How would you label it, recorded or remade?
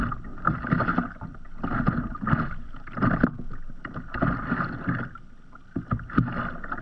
recorded